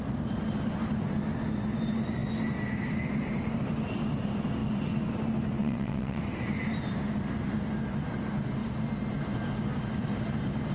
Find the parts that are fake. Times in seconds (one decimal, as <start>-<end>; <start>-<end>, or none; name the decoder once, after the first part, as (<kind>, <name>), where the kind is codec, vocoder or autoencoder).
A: 5.6-6.2 (vocoder, WaveNeXt)